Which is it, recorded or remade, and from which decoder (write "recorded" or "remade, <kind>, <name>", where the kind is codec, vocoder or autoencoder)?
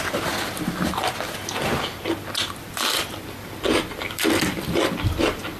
remade, vocoder, BigVGAN v2